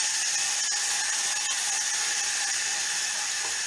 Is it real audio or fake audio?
real